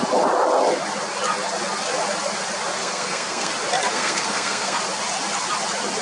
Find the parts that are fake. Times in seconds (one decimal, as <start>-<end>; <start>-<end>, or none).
2.8-3.5; 3.9-4.8